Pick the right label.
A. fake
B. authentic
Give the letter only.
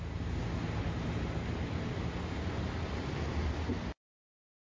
B